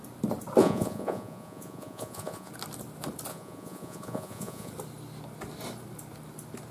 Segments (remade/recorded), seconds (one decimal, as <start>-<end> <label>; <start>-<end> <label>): 0.0-0.6 recorded; 0.6-2.5 remade; 2.5-3.3 recorded; 3.3-4.7 remade; 4.7-6.7 recorded